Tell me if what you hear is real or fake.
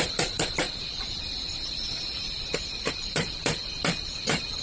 fake